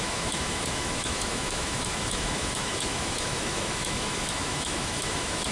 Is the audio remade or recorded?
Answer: remade